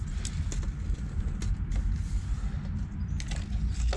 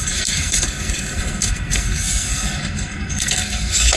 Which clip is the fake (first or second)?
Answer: second